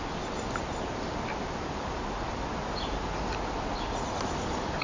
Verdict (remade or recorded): recorded